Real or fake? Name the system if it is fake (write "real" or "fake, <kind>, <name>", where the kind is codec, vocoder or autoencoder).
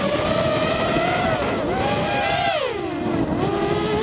real